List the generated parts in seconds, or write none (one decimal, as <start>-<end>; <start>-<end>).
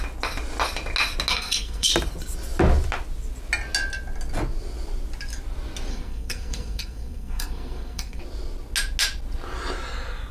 1.3-1.9; 5.9-8.2